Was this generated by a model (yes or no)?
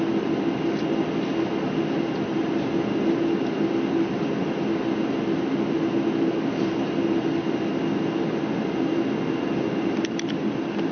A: no